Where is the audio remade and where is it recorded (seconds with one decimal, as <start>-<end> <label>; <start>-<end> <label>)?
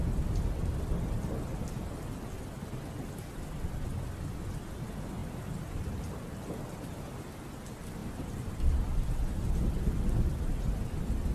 0.0-5.2 recorded; 5.2-6.9 remade; 6.9-11.3 recorded